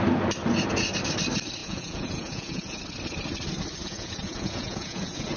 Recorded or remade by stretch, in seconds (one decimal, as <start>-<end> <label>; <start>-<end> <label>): 0.0-1.6 recorded; 1.6-2.8 remade; 2.8-3.8 recorded; 3.8-5.4 remade

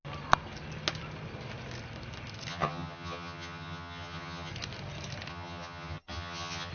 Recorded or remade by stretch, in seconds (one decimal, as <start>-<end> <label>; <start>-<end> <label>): 0.0-2.5 recorded; 2.5-4.5 remade; 4.5-5.3 recorded; 5.3-6.7 remade

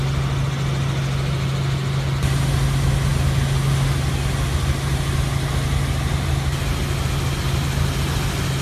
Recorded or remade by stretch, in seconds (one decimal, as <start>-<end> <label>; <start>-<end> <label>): 0.0-8.6 recorded

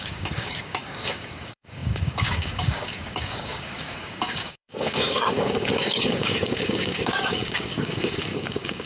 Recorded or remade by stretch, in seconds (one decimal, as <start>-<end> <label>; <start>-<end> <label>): 0.0-8.9 remade

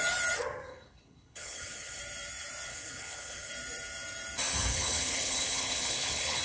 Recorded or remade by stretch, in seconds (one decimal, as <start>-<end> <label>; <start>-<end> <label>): 0.0-0.7 recorded; 0.7-2.0 remade; 2.0-2.7 recorded; 2.7-3.5 remade; 3.5-4.7 recorded; 4.7-6.4 remade

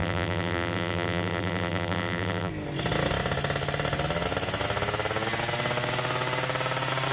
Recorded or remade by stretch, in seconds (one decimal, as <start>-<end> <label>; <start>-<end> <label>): 0.0-2.5 remade; 2.5-7.1 recorded

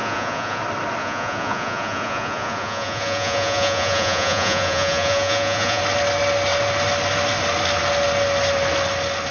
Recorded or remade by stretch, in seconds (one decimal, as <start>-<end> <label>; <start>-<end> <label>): 0.0-0.6 remade; 0.6-1.0 recorded; 1.0-5.8 remade; 5.8-9.3 recorded

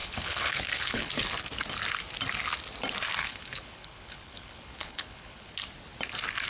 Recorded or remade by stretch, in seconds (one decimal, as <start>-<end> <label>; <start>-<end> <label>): 0.0-1.1 remade; 1.1-3.2 recorded; 3.2-5.5 remade; 5.5-6.5 recorded